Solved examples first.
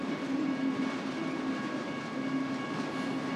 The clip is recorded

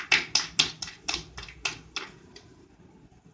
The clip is recorded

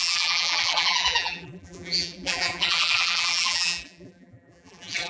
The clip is remade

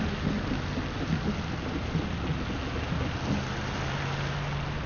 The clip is recorded